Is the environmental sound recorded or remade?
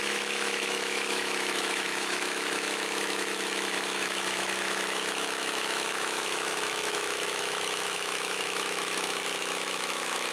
remade